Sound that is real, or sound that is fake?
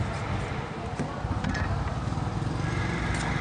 real